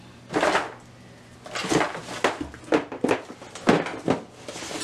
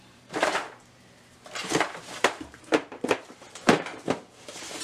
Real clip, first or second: first